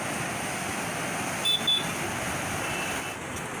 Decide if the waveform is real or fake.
real